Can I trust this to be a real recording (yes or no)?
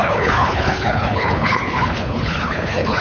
no